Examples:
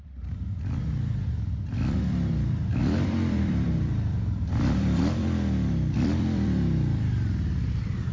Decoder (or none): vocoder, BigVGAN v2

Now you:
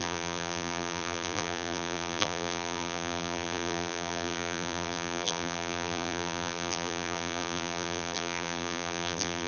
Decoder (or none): vocoder, BigVGAN v2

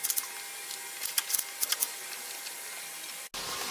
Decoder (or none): none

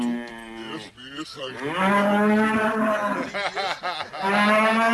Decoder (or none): none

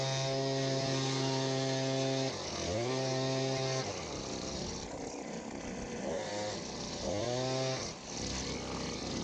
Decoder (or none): none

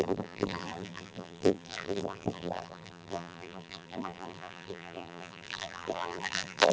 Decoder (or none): vocoder, BigVGAN v2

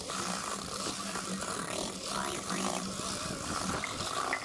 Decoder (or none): vocoder, BigVGAN v2